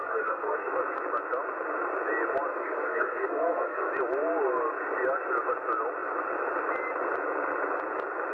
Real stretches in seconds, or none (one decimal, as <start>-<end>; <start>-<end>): 0.7-2.5; 3.9-8.3